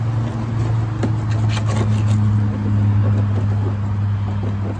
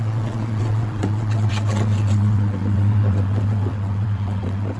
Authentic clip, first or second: first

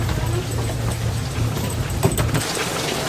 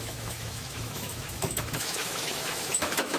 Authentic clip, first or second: first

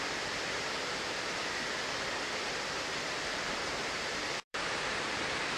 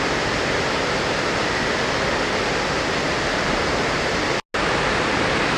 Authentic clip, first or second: second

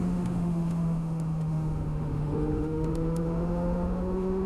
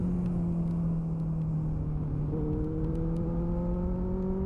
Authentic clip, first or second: second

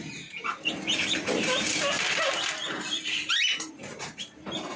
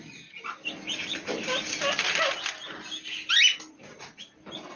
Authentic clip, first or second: second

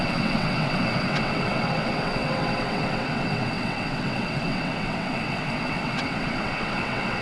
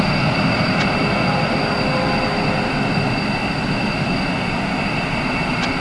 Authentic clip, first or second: second